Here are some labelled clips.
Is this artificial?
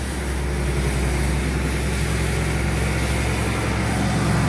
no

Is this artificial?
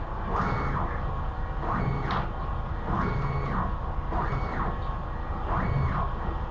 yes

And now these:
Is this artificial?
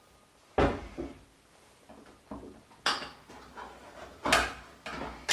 no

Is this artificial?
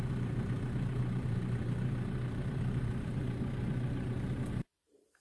yes